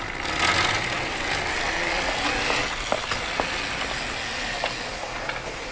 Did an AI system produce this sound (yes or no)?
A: no